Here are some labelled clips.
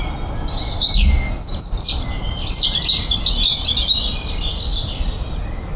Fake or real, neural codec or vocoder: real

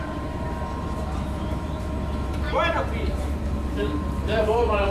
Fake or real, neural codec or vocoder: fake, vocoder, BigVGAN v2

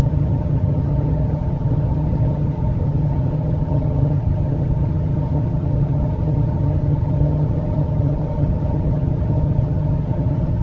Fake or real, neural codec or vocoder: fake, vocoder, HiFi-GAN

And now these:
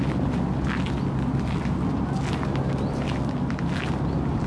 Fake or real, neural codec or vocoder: real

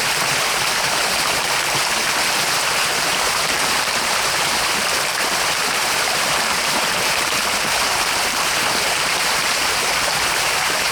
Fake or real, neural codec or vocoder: fake, vocoder, BigVGAN v2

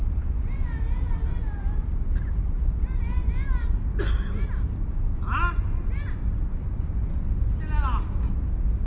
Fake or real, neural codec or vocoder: real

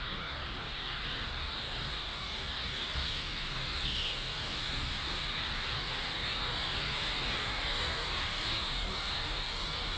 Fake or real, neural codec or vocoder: fake, codec, DAC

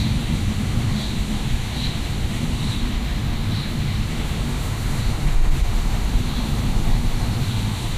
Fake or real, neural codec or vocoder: fake, autoencoder, DAC-VAE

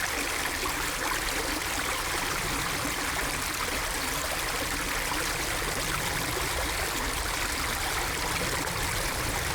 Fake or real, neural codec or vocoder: real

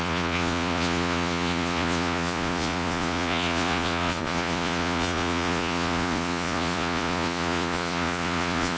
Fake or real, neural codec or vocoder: fake, vocoder, Vocos